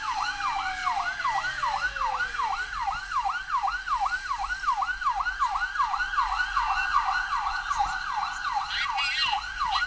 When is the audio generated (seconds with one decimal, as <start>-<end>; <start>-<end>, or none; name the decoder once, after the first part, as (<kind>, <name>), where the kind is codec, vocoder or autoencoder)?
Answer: none